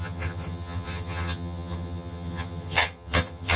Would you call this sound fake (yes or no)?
yes